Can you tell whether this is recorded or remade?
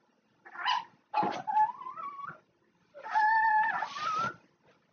recorded